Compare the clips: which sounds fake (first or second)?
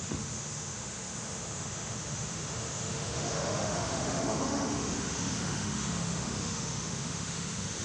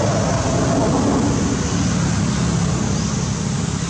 first